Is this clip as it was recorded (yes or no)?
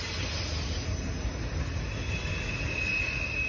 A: yes